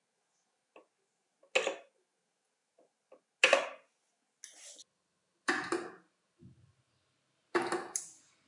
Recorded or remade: recorded